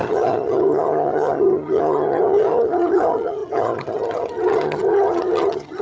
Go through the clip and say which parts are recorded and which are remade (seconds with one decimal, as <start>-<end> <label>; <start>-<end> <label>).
0.0-5.8 remade